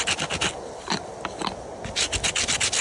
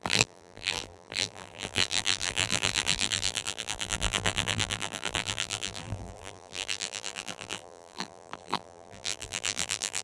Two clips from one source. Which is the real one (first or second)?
first